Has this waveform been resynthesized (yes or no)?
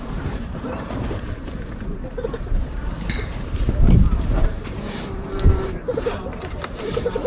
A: yes